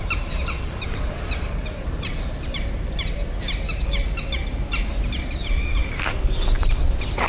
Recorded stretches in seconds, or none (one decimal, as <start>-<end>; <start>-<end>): 0.0-7.3